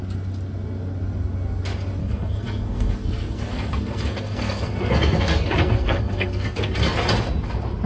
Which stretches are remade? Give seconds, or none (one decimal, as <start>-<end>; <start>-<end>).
2.0-6.7